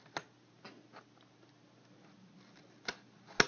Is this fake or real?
real